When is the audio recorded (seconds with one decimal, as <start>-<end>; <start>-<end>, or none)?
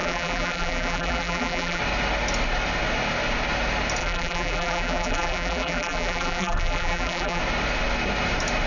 1.8-4.0; 7.4-8.7